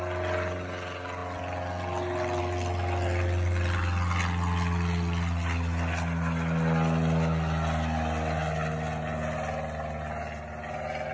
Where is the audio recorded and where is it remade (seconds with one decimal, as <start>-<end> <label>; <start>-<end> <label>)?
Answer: 0.0-11.1 recorded